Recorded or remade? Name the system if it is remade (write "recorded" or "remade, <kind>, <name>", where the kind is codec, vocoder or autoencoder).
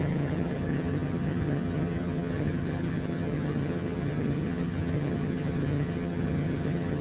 remade, vocoder, HiFi-GAN